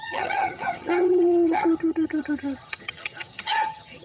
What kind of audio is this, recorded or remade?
remade